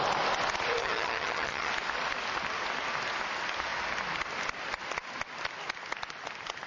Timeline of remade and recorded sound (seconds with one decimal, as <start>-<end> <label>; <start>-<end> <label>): 0.0-0.8 recorded; 0.8-1.7 remade; 1.7-6.7 recorded